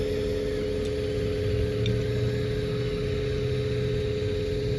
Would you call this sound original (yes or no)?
yes